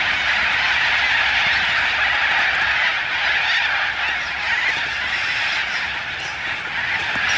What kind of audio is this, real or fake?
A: real